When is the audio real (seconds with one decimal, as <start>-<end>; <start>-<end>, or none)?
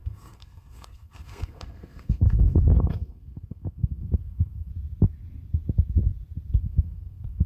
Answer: 4.7-6.6